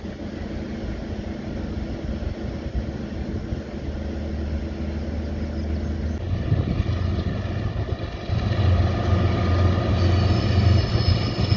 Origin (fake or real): real